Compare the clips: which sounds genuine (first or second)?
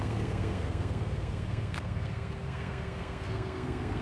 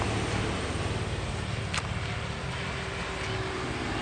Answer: second